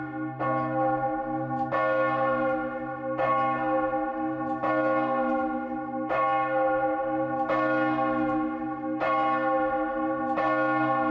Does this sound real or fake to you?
real